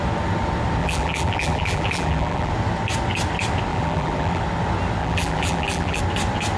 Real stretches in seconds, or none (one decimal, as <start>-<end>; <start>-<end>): 0.0-0.8; 2.5-3.7; 4.4-5.0; 6.0-6.6